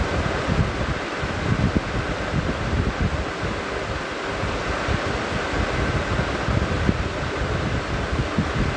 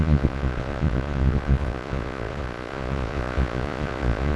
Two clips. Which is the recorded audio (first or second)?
first